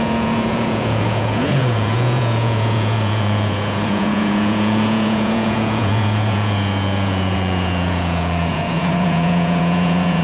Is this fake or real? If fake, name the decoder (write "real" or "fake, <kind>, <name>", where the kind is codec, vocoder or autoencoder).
fake, vocoder, Vocos